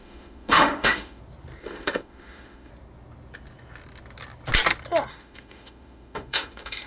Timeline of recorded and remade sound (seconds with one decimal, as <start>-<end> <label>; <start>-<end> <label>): 0.0-1.2 remade; 1.2-1.6 recorded; 1.6-2.7 remade; 2.7-5.1 recorded; 5.1-6.9 remade